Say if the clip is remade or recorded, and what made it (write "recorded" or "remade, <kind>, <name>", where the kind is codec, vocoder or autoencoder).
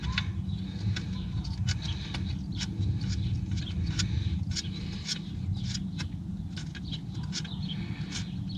recorded